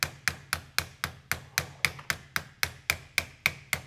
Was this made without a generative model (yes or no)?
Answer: yes